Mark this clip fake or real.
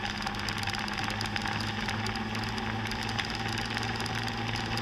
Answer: real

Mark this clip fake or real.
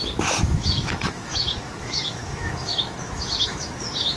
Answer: fake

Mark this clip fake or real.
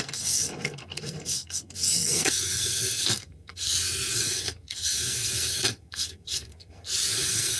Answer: fake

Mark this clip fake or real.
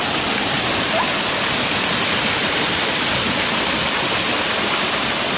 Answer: real